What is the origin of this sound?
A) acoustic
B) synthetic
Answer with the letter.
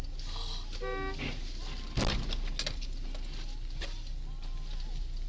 A